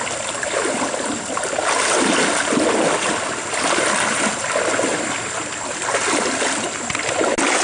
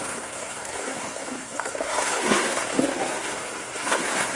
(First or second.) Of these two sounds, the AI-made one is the second